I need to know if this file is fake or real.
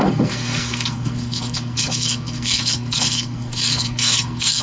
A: fake